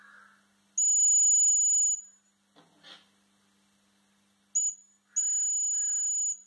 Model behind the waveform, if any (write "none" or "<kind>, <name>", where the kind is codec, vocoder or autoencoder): none